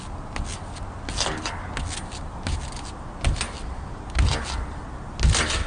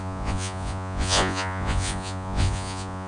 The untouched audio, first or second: first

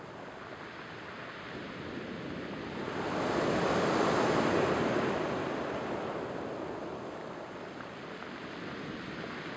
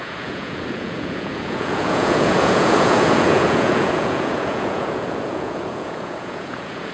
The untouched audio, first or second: first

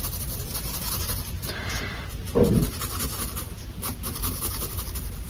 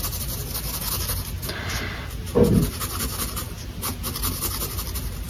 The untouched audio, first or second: second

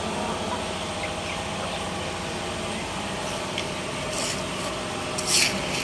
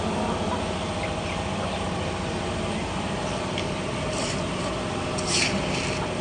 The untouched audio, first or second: first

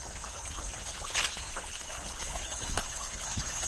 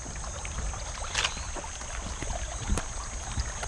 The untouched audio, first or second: second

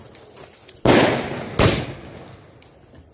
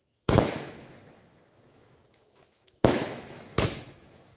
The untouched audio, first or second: first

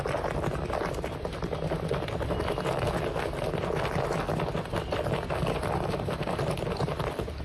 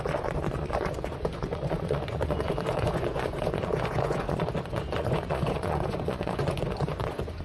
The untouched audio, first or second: first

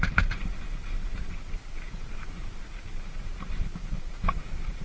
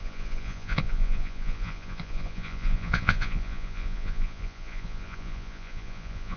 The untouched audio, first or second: first